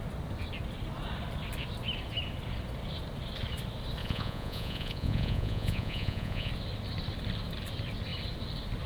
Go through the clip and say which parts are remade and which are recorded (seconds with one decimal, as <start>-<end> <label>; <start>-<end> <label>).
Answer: 0.0-4.0 recorded; 4.0-6.5 remade; 6.5-8.9 recorded